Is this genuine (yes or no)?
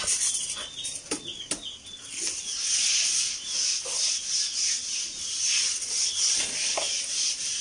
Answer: yes